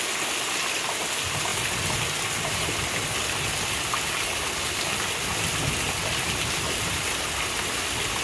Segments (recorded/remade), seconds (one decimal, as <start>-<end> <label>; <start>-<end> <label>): 0.0-8.2 recorded